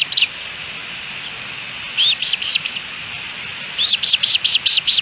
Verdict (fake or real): real